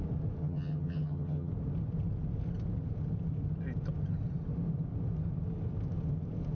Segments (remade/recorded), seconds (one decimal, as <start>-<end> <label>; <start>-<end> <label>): 0.0-0.4 recorded; 0.4-1.5 remade; 1.5-6.5 recorded

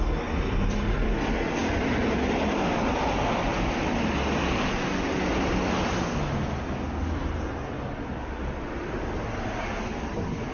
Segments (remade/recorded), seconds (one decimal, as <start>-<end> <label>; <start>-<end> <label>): 0.0-10.5 recorded

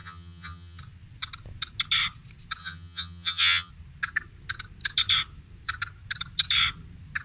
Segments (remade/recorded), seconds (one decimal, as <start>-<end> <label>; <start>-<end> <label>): 0.0-0.8 remade; 0.8-2.6 recorded; 2.6-3.7 remade; 3.7-7.2 recorded

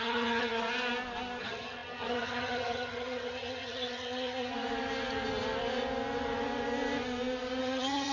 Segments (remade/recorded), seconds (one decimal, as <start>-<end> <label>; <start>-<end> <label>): 0.0-0.6 remade; 0.6-1.4 recorded; 1.4-4.5 remade; 4.5-7.6 recorded; 7.6-8.1 remade

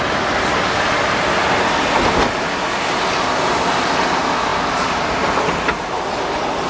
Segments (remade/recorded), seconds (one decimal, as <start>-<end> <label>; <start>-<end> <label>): 0.0-6.7 recorded

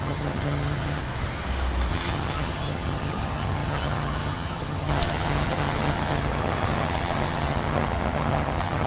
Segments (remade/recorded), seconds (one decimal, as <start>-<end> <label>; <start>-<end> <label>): 0.0-1.0 remade; 1.0-1.9 recorded; 1.9-8.9 remade